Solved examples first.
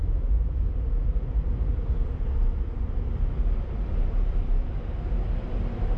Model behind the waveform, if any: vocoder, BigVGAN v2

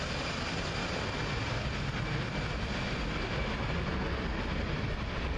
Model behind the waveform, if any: none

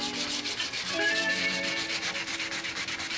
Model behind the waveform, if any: none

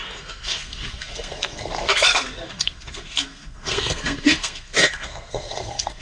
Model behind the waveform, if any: codec, SNAC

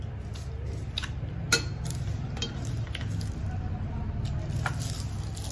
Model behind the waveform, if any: none